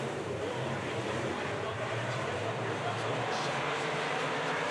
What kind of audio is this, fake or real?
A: fake